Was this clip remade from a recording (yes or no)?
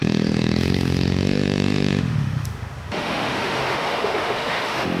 yes